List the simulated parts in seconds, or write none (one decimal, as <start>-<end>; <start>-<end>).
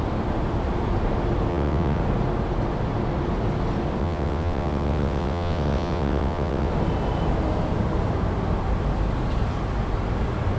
1.5-2.0; 4.0-6.7